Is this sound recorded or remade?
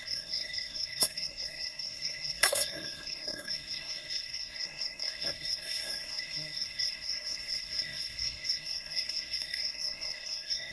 remade